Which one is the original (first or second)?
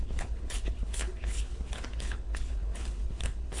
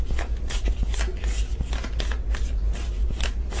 second